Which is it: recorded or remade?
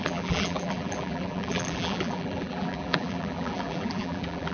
remade